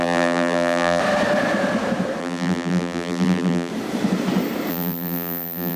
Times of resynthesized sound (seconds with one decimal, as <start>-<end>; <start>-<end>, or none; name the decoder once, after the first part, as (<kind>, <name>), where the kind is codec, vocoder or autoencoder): 0.0-1.0 (vocoder, BigVGAN v2); 2.2-3.7; 4.7-5.8